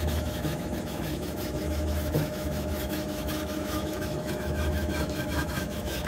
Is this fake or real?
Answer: fake